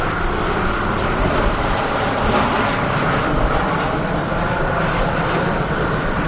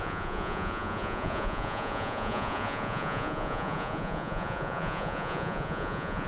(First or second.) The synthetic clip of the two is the second